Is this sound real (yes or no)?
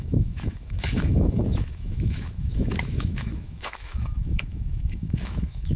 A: no